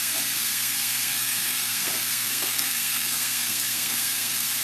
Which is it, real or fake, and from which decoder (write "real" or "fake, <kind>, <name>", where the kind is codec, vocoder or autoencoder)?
fake, codec, SNAC